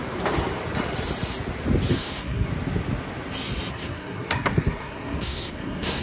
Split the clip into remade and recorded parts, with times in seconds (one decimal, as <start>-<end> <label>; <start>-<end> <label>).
0.0-1.9 recorded; 1.9-2.5 remade; 2.5-3.7 recorded; 3.7-6.0 remade